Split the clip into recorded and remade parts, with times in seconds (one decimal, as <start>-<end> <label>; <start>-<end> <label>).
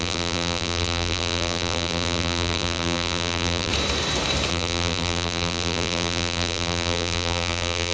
0.0-3.7 remade; 3.7-4.5 recorded; 4.5-7.9 remade